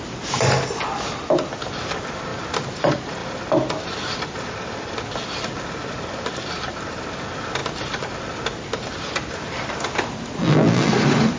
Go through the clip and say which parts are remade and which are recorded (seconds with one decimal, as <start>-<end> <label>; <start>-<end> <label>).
0.0-10.4 recorded; 10.4-10.9 remade; 10.9-11.4 recorded